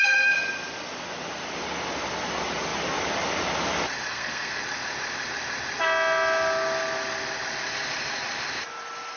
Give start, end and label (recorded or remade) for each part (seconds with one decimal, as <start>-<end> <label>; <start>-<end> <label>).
0.0-4.1 recorded; 4.1-4.6 remade; 4.6-9.2 recorded